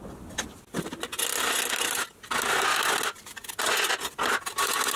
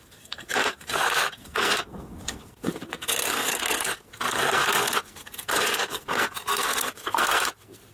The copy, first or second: second